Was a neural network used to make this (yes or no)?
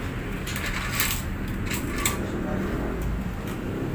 no